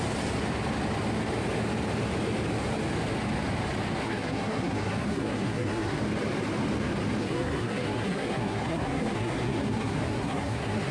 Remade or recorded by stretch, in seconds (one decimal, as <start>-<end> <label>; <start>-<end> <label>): 0.0-4.0 recorded; 4.0-6.0 remade; 6.0-7.2 recorded; 7.2-10.9 remade